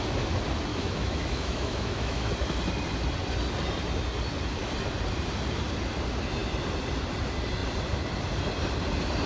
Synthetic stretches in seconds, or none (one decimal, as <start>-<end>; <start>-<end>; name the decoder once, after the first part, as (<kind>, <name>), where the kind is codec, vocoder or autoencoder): 0.7-2.3 (autoencoder, DAC-VAE)